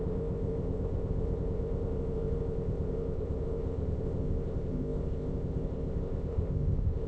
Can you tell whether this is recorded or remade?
remade